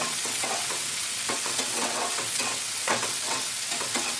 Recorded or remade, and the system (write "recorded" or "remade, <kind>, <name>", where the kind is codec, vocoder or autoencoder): remade, vocoder, WaveNeXt